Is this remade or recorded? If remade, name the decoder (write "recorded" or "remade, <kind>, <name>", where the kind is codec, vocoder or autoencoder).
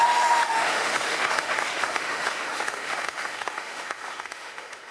remade, autoencoder, DAC-VAE